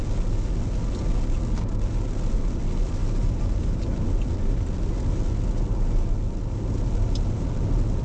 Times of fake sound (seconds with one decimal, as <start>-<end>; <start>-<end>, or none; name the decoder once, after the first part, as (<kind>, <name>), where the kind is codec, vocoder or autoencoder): 3.0-3.9 (vocoder, BigVGAN v2)